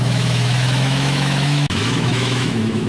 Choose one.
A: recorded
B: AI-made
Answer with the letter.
B